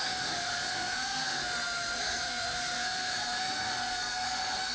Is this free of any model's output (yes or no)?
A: no